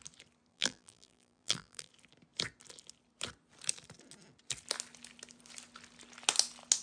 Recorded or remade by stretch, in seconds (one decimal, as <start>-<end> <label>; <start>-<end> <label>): 0.0-0.5 recorded; 0.5-1.9 remade; 1.9-6.8 recorded